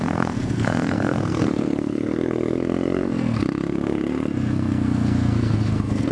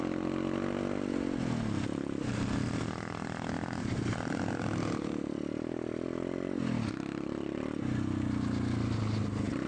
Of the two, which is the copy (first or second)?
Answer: first